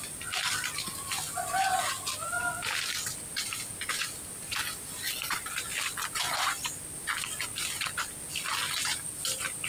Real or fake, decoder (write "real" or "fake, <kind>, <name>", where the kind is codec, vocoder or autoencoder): real